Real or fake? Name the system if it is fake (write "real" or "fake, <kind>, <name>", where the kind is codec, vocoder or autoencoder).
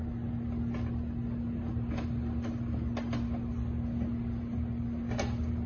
real